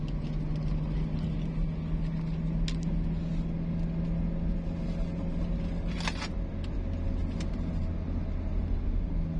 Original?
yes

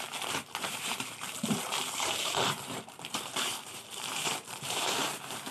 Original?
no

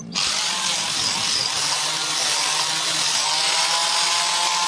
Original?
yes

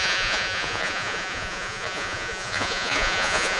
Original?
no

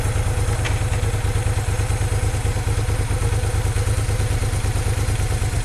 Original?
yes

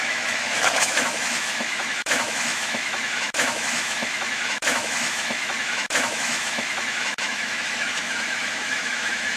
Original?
no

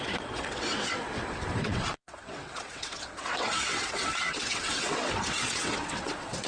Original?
no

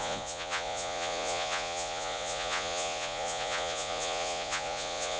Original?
no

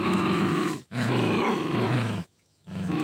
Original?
no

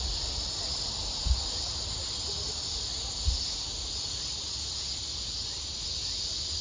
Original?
yes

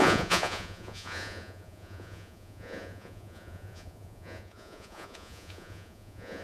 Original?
no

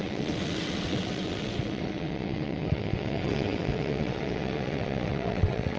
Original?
no